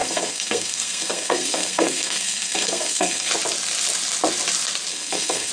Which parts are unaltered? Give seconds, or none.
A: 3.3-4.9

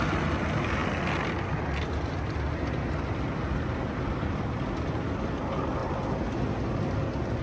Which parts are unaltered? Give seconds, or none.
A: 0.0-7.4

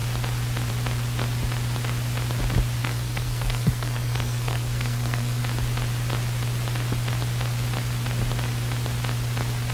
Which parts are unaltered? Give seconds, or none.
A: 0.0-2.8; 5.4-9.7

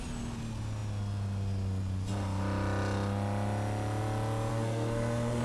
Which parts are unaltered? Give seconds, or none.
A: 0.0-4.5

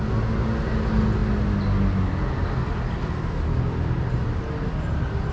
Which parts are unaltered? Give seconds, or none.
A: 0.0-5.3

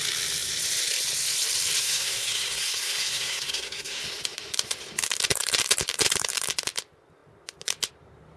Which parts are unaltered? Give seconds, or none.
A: 0.0-1.8; 4.0-8.4

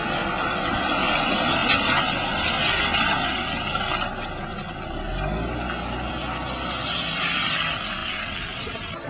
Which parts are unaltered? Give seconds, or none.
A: 0.0-9.1

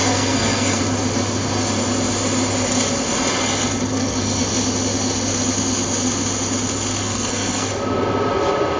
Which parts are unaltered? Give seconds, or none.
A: 0.8-3.9; 4.4-7.0; 7.7-8.8